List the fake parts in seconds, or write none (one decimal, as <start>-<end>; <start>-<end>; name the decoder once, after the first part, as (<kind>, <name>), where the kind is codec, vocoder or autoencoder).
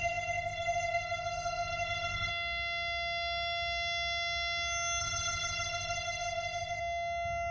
0.0-2.3 (codec, ZipCodec); 5.0-6.8